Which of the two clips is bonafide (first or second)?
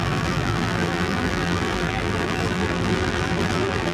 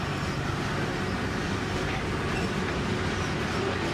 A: second